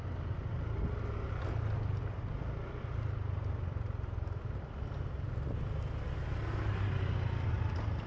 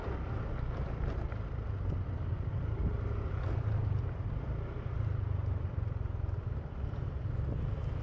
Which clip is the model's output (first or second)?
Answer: second